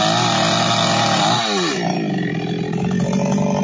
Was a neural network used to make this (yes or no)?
no